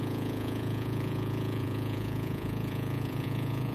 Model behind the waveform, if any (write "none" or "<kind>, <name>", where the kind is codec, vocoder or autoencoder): vocoder, Vocos